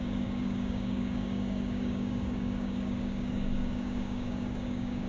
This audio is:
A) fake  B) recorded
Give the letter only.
A